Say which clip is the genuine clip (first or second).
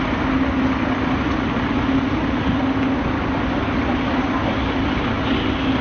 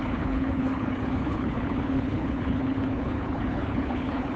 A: first